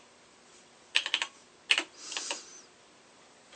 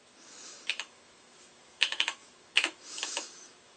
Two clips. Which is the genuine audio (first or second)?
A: first